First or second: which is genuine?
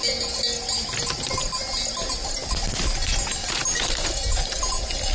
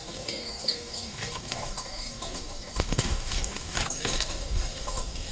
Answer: first